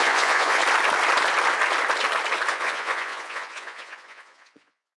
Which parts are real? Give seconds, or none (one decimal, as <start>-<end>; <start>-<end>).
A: 0.6-2.5